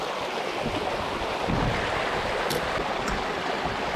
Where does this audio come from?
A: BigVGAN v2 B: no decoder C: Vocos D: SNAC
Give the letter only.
B